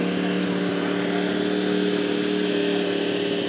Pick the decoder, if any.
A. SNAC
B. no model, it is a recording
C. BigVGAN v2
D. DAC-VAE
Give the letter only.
B